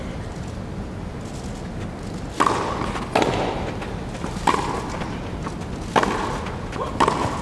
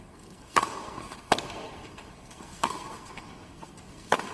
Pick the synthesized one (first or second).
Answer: second